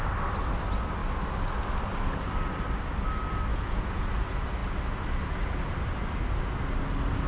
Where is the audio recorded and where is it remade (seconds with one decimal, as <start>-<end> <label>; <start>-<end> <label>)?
0.0-3.5 recorded; 3.5-4.0 remade; 4.0-7.3 recorded